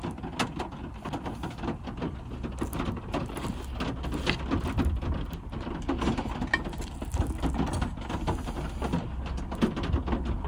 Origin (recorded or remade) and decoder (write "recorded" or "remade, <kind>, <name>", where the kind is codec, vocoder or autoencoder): recorded